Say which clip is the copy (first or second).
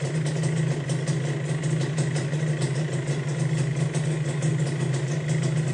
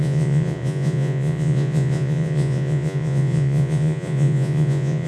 second